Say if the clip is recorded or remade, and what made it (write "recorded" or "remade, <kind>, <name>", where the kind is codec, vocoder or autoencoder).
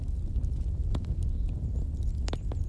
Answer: recorded